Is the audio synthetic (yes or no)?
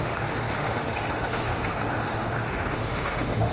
yes